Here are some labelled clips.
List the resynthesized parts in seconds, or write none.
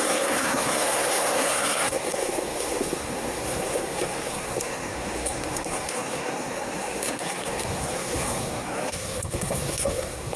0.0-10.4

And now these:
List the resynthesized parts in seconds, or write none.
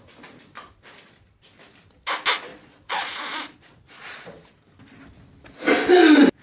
2.5-4.5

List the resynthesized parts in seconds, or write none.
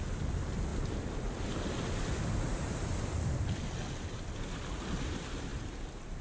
none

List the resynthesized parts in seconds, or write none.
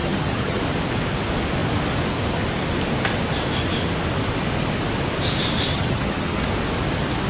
0.0-0.6; 5.7-6.4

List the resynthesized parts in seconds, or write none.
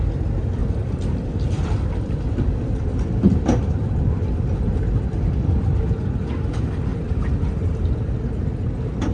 0.6-5.8; 6.9-8.4